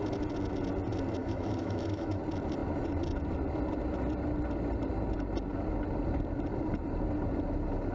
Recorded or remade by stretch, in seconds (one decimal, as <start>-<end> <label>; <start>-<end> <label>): 0.0-1.2 recorded; 1.2-2.2 remade; 2.2-7.9 recorded